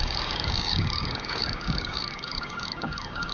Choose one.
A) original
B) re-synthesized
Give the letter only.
B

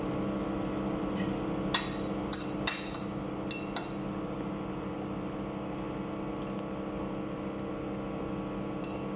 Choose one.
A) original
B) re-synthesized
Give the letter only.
A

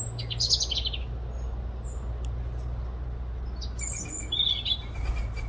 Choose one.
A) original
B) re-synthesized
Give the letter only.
A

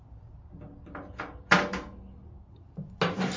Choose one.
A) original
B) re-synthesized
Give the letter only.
A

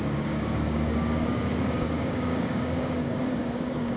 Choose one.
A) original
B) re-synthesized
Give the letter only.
B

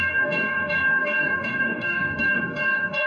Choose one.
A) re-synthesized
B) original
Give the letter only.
A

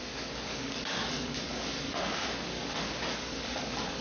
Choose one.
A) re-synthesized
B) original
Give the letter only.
A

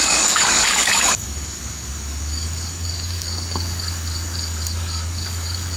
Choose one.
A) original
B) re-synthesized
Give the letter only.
B